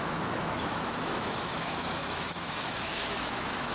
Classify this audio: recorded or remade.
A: remade